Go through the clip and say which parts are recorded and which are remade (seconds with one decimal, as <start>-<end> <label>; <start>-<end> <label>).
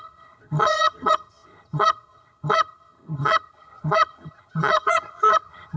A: 0.0-5.8 remade